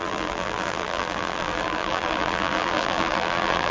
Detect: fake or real fake